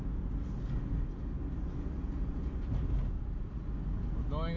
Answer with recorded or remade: recorded